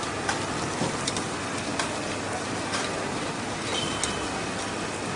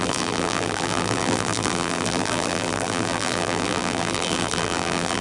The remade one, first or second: second